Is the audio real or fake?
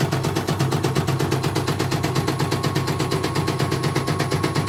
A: real